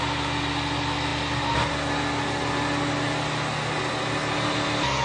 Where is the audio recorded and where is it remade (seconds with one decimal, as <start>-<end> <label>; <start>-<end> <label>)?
0.0-5.0 recorded